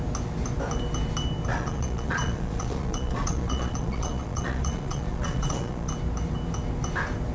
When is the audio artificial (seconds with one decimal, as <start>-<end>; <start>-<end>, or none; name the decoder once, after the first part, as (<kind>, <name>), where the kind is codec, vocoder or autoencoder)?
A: 1.5-5.9 (vocoder, Vocos)